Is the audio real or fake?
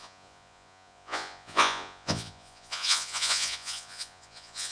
fake